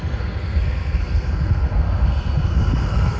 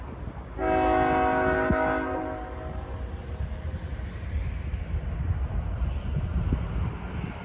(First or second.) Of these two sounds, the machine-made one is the first